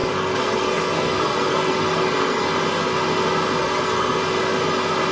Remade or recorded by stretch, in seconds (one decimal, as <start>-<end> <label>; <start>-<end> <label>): 0.0-2.5 remade; 2.5-3.6 recorded; 3.6-4.2 remade; 4.2-5.1 recorded